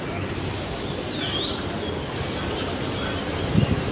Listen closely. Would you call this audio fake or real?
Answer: real